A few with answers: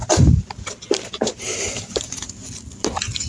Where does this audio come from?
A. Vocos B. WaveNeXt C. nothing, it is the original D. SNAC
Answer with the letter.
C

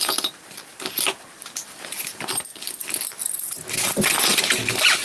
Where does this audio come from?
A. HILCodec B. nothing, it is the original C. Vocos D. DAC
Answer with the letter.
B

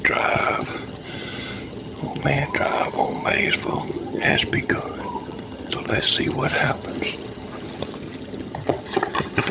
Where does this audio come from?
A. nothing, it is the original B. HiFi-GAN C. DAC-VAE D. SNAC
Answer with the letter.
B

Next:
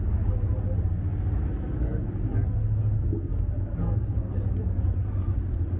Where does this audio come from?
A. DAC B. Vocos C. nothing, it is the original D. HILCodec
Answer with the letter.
C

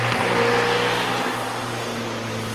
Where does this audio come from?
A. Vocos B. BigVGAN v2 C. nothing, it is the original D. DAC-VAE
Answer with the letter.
C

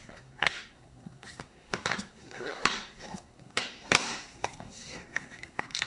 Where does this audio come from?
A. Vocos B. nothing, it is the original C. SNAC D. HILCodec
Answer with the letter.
C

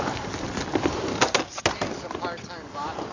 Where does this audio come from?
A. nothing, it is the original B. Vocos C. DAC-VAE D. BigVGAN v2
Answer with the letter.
A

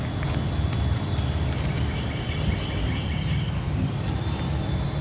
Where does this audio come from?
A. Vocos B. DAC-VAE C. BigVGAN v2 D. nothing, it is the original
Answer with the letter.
D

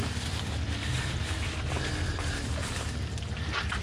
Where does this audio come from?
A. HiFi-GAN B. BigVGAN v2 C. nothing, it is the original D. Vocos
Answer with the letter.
C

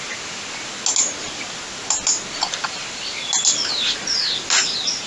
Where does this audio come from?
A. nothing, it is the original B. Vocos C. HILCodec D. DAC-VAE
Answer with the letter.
A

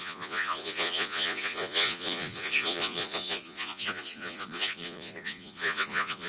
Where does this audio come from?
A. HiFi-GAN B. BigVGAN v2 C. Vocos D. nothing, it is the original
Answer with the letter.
C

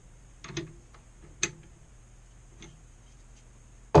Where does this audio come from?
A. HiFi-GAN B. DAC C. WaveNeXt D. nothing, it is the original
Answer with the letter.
D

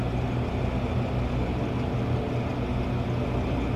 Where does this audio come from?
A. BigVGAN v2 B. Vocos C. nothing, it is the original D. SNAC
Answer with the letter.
C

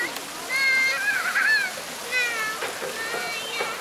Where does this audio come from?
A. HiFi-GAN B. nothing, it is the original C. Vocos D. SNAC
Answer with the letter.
B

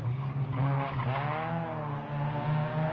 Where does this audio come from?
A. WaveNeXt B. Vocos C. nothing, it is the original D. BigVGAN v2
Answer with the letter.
C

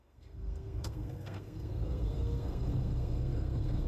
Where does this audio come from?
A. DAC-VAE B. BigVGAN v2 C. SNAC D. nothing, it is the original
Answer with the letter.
C